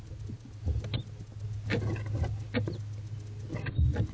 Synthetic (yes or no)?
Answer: no